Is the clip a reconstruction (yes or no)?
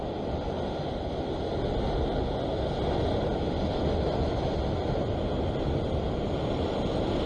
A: no